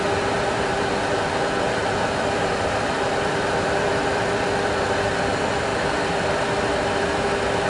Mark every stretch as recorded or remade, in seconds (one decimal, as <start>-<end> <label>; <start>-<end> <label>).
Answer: 0.0-1.8 recorded; 1.8-5.1 remade; 5.1-5.7 recorded; 5.7-6.2 remade; 6.2-7.7 recorded